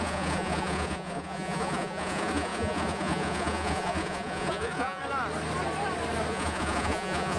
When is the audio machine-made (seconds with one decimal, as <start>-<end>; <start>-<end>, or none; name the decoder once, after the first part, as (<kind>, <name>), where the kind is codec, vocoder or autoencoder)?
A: 0.0-5.0 (vocoder, Vocos); 6.3-7.4